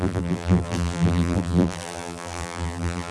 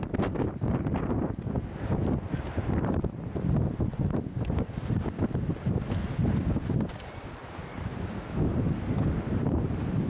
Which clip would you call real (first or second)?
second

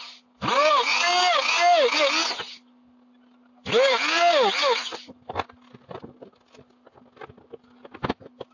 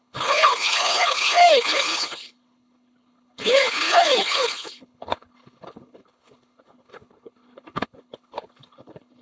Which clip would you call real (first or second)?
first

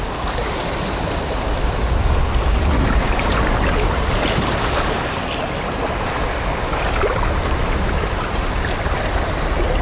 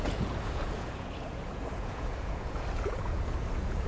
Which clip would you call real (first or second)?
first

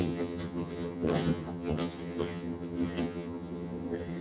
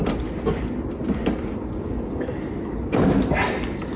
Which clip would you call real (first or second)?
second